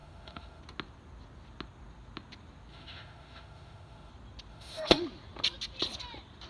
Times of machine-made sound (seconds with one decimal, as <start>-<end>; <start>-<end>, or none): 0.0-0.6; 2.7-4.1; 4.5-5.0